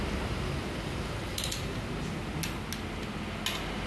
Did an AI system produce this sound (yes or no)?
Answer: no